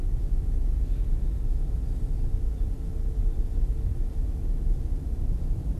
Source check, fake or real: real